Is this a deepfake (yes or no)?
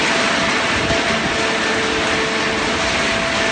no